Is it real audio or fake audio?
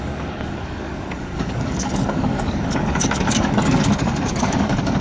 fake